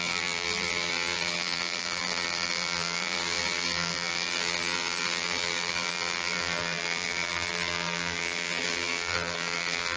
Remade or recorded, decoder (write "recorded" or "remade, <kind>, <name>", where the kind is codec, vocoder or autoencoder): remade, vocoder, BigVGAN v2